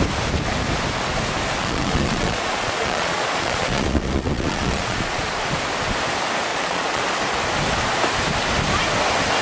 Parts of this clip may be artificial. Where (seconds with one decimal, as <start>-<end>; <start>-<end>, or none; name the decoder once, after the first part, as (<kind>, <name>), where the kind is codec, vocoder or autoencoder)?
1.6-5.2 (vocoder, Vocos); 6.5-7.0